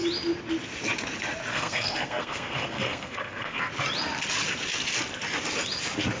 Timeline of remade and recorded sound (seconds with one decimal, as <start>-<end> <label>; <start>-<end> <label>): 0.0-1.5 recorded; 1.5-3.7 remade; 3.7-6.2 recorded